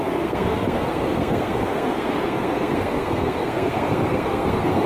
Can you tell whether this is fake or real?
fake